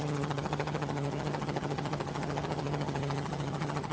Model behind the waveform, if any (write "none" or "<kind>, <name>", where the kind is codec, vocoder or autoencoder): vocoder, HiFi-GAN